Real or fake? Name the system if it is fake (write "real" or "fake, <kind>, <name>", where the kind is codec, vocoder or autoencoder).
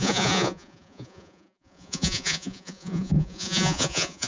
fake, vocoder, Vocos